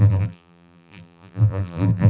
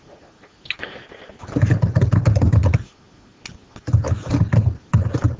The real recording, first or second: second